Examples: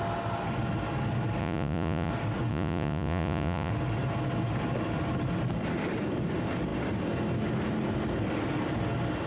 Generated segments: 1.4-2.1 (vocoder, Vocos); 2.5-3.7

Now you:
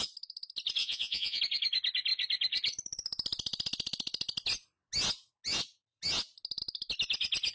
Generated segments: 0.8-1.4 (vocoder, Vocos)

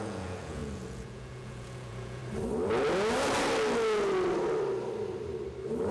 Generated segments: 0.0-2.2 (vocoder, Vocos)

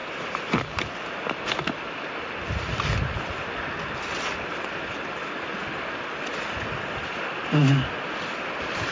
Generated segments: none

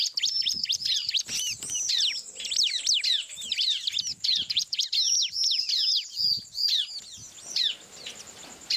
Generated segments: 4.1-4.8 (vocoder, Vocos)

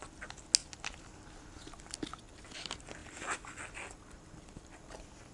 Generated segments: none

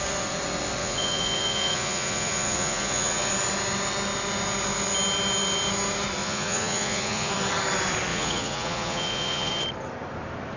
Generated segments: 0.8-3.3 (vocoder, Vocos); 6.2-7.3; 8.1-9.5

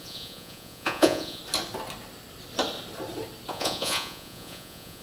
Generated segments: 0.0-1.4 (vocoder, Vocos); 3.5-5.0